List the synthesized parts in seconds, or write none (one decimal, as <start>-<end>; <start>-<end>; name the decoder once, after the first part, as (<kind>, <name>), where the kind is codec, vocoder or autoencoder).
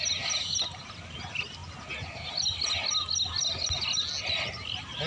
none